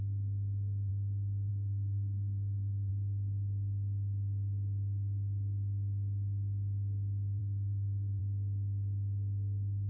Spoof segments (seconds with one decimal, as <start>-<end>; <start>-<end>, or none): 1.5-2.9; 7.4-8.2